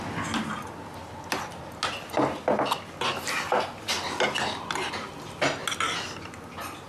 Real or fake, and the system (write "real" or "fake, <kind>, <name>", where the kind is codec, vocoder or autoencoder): real